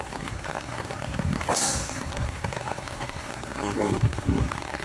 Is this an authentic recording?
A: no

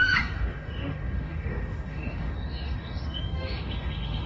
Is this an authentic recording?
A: no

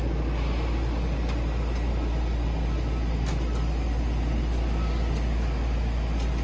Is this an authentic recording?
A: yes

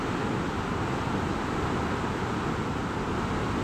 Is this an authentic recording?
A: yes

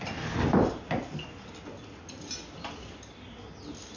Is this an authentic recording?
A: yes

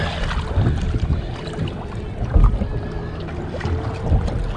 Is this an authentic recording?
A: yes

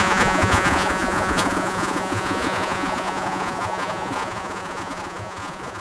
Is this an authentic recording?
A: no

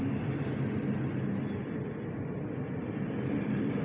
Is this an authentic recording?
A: yes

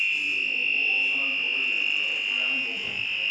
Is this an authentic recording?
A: yes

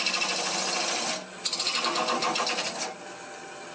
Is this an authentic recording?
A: yes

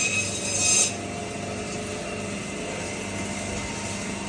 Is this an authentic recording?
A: yes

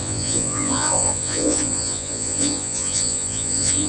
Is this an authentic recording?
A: no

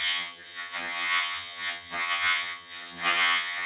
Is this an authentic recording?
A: no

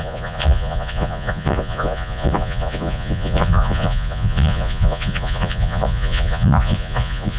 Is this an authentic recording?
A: no